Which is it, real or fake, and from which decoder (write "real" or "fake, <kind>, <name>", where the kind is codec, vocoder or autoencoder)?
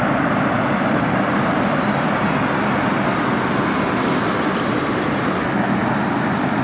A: real